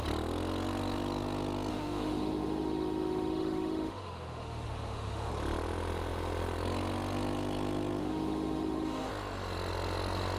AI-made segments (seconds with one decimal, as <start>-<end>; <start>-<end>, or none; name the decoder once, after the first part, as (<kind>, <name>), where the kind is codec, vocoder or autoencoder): 1.7-5.3 (autoencoder, DAC-VAE); 8.0-9.1